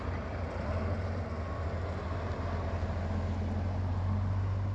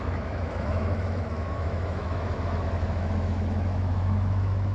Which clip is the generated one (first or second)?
second